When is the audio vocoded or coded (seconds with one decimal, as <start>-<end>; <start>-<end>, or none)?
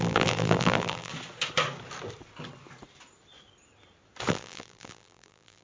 0.0-1.1; 4.3-5.6